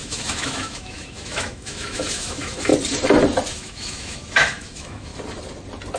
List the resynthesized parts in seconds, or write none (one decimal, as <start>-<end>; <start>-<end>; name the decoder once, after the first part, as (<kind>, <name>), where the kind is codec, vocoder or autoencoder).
0.0-2.7 (autoencoder, DAC-VAE); 3.5-5.1